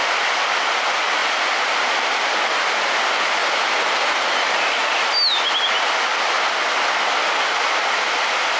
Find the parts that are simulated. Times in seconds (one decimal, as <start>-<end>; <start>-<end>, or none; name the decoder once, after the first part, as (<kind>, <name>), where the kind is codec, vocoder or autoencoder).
1.2-1.8 (vocoder, BigVGAN v2); 3.4-4.5